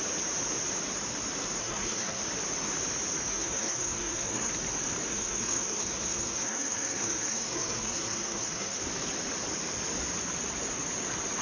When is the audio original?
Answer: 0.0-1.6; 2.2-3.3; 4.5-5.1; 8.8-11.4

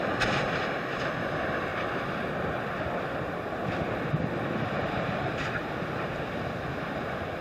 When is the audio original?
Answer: 0.0-1.7; 3.0-3.6; 4.3-4.8; 6.3-7.4

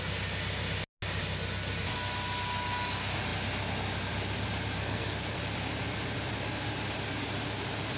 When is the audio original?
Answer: 0.0-4.8; 5.4-8.0

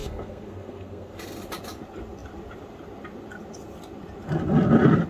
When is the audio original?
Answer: 1.1-5.1

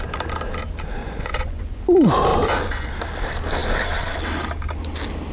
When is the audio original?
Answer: 0.0-1.0; 1.8-2.3; 2.9-5.3

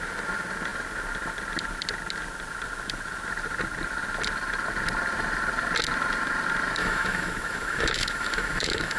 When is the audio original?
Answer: 0.0-6.8

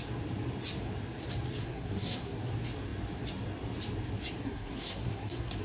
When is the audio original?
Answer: 0.0-1.6; 2.5-4.4